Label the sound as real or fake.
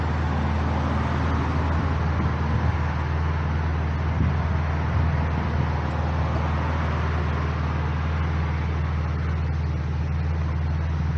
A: real